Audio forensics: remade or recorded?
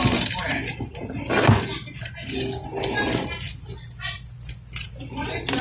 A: recorded